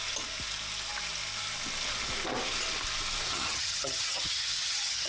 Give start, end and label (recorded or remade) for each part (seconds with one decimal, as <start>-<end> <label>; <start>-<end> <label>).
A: 0.0-3.3 recorded; 3.3-5.1 remade